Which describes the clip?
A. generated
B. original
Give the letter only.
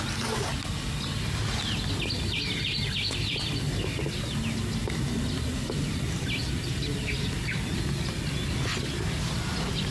B